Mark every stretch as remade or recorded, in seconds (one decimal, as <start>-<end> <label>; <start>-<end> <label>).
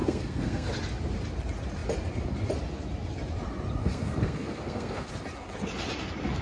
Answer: 0.0-0.7 remade; 0.7-3.8 recorded; 3.8-5.1 remade; 5.1-6.4 recorded